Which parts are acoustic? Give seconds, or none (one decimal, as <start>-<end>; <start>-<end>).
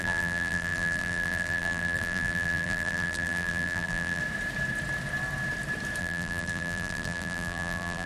4.2-6.0